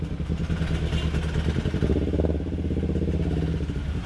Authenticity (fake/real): real